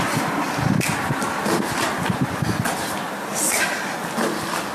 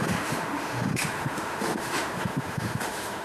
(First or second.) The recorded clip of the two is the first